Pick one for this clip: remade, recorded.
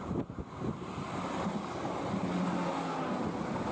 recorded